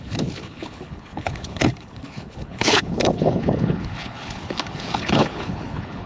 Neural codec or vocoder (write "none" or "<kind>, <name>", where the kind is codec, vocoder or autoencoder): codec, HILCodec